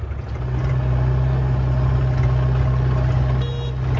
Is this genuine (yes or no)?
yes